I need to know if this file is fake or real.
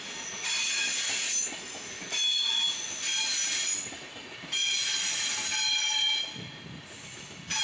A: real